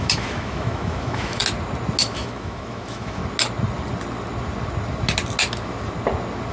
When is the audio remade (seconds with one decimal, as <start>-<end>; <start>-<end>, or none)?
0.0-1.4; 2.1-3.2